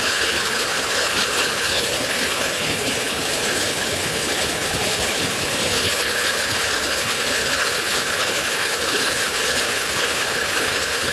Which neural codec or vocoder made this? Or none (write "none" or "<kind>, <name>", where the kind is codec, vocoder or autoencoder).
codec, HILCodec